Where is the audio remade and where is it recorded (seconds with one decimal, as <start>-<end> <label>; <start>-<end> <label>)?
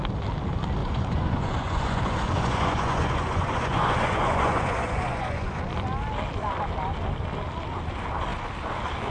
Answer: 0.0-0.8 recorded; 0.8-5.6 remade; 5.6-9.1 recorded